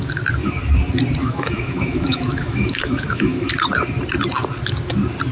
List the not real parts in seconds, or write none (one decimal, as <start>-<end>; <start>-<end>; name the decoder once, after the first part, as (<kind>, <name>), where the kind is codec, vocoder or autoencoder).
1.2-3.5 (autoencoder, DAC-VAE)